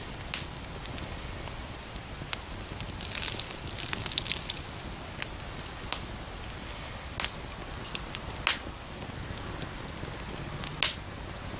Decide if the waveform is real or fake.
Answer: real